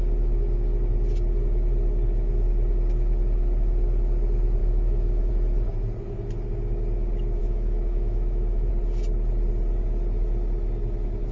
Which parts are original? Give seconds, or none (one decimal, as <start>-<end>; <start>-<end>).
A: 0.0-4.6; 5.3-7.4; 8.7-11.3